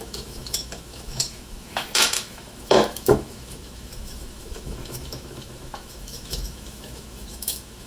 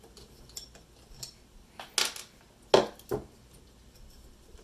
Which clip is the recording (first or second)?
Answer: second